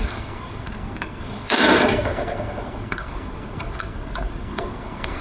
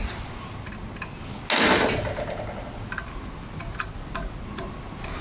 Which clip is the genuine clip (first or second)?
second